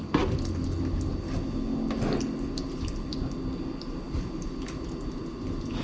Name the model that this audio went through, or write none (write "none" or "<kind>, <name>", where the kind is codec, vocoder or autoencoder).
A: none